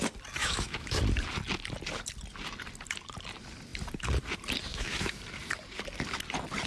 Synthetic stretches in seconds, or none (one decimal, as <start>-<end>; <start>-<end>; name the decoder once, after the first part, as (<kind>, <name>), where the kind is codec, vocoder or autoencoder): 0.4-1.0 (autoencoder, DAC-VAE); 4.7-5.2